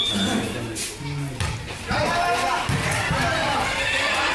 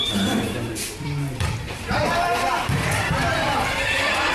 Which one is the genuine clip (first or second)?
first